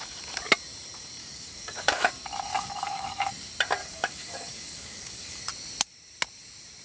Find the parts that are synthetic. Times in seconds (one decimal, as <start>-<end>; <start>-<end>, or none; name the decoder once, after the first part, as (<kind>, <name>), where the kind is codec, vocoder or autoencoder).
1.2-2.1 (codec, DAC); 2.5-3.3; 3.8-5.4